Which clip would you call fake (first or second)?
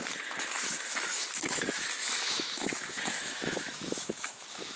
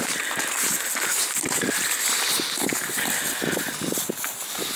first